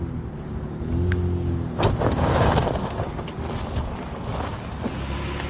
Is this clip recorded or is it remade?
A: recorded